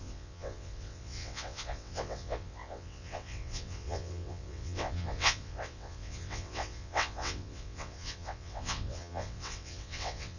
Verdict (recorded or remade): remade